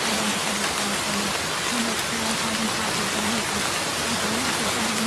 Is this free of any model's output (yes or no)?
yes